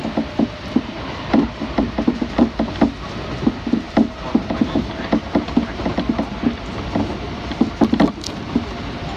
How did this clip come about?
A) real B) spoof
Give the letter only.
A